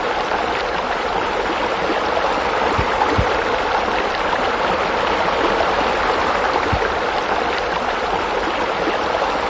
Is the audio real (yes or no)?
yes